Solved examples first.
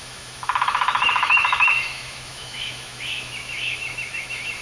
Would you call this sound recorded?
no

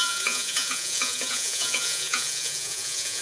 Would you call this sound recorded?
no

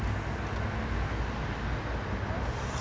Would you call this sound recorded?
yes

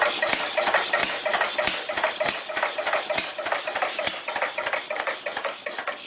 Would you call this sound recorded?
no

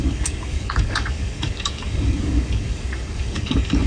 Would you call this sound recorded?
no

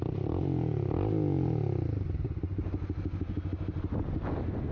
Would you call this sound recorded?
yes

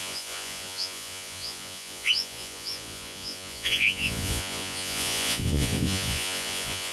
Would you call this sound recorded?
no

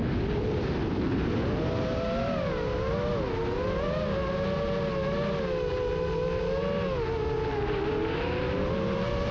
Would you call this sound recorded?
yes